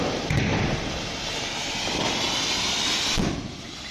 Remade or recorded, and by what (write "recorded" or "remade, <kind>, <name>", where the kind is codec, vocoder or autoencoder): recorded